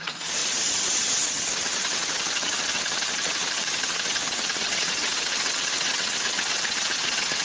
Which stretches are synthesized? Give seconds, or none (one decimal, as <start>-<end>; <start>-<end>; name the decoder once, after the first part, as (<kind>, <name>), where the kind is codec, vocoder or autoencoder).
0.0-7.4 (vocoder, WaveNeXt)